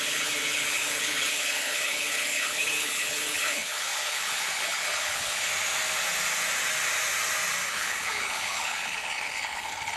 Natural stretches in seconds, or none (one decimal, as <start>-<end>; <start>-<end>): 5.5-7.7